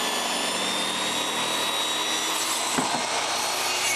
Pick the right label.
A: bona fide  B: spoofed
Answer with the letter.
A